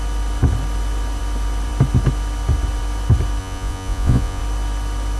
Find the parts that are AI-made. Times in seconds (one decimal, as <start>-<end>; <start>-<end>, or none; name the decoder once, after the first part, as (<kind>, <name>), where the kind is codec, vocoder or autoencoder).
3.4-4.4 (vocoder, Vocos)